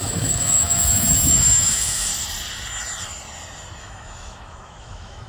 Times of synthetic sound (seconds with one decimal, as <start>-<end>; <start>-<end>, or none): 0.0-2.1; 3.8-5.3